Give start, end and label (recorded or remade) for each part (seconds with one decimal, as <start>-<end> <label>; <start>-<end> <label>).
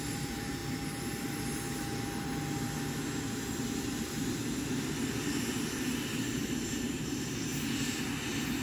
0.0-0.6 remade; 0.6-5.8 recorded; 5.8-7.5 remade; 7.5-8.6 recorded